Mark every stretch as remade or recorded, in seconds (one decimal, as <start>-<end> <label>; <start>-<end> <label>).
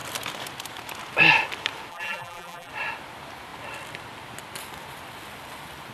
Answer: 0.0-1.9 recorded; 1.9-2.7 remade; 2.7-5.9 recorded